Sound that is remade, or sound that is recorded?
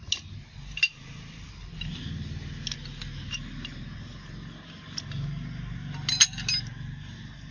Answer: recorded